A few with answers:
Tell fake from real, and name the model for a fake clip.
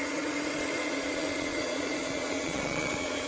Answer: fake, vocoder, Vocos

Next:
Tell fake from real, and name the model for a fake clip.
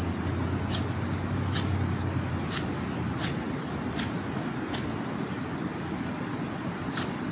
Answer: real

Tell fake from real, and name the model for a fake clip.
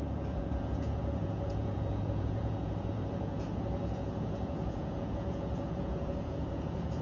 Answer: fake, vocoder, Vocos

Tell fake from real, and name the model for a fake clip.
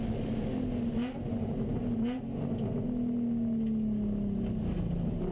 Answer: real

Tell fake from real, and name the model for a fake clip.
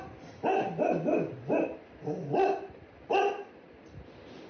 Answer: real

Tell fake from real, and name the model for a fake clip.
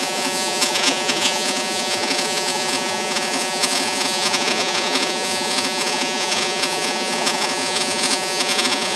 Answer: fake, vocoder, Vocos